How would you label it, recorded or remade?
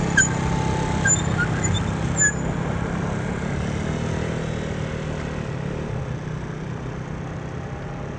recorded